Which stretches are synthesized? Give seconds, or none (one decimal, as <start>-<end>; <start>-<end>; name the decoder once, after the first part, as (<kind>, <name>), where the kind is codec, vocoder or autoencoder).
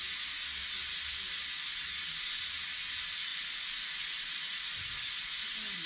none